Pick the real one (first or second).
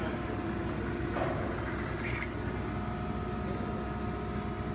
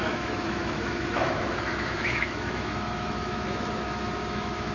first